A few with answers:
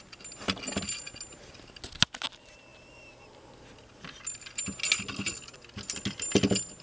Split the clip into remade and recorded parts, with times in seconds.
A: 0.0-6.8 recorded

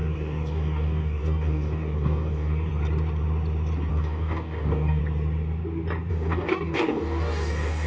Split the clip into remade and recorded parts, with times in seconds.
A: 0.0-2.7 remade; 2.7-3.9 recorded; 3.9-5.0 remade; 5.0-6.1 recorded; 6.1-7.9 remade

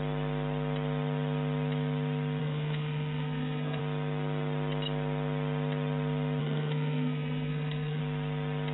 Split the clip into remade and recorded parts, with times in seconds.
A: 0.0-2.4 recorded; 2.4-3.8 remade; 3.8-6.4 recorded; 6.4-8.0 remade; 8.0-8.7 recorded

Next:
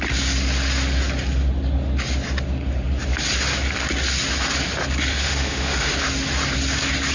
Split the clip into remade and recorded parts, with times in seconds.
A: 0.0-5.1 recorded; 5.1-5.9 remade; 5.9-7.1 recorded